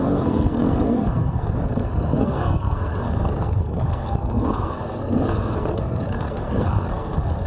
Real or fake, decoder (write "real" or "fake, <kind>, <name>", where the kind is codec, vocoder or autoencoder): fake, codec, SNAC